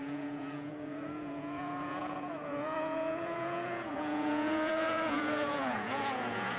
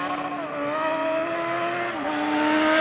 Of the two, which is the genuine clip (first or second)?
second